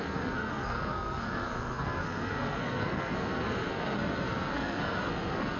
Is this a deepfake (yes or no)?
yes